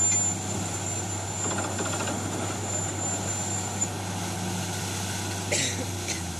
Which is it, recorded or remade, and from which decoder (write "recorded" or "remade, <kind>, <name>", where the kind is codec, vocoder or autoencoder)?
recorded